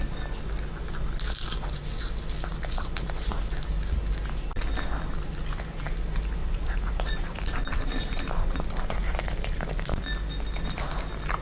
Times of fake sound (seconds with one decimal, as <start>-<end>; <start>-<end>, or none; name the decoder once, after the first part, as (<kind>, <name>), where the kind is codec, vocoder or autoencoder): 2.5-3.3 (vocoder, BigVGAN v2); 6.4-10.0